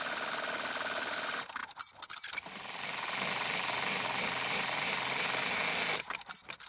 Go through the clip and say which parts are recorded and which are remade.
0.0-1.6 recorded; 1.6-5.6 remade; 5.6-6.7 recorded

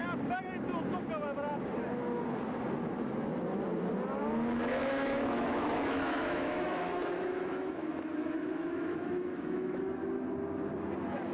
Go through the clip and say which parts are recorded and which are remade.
0.0-4.8 recorded; 4.8-9.8 remade; 9.8-11.3 recorded

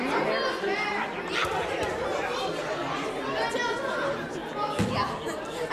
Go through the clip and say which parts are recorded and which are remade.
0.0-5.7 recorded

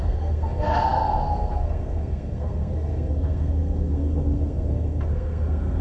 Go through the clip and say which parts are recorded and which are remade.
0.0-5.8 remade

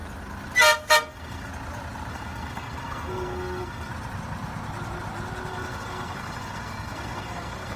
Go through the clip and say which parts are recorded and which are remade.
0.0-0.9 recorded; 0.9-1.5 remade; 1.5-2.1 recorded; 2.1-3.9 remade; 3.9-5.5 recorded; 5.5-7.8 remade